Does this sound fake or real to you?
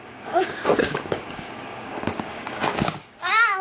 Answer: fake